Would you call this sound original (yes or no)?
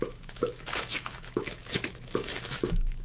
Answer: no